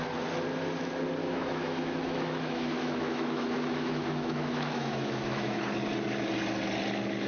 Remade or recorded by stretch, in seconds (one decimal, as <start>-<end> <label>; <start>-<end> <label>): 0.0-1.2 recorded; 1.2-5.6 remade; 5.6-7.3 recorded

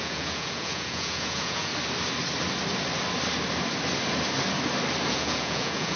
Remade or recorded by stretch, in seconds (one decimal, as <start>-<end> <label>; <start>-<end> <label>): 0.0-1.7 remade; 1.7-5.1 recorded; 5.1-6.0 remade

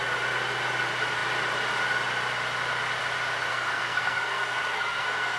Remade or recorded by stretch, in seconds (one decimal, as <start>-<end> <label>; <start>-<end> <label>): 0.0-3.5 recorded; 3.5-5.4 remade

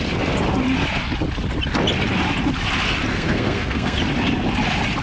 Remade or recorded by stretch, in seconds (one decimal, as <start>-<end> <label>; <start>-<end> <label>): 0.0-3.1 recorded; 3.1-4.0 remade; 4.0-5.0 recorded

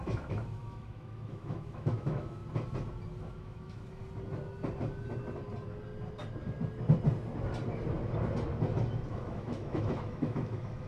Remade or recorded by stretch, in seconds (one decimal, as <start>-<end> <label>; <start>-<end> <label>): 0.0-2.4 remade; 2.4-3.2 recorded; 3.2-4.0 remade; 4.0-9.1 recorded; 9.1-10.9 remade